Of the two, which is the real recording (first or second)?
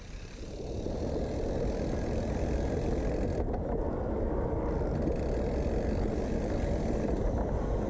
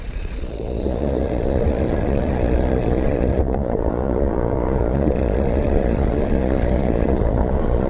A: first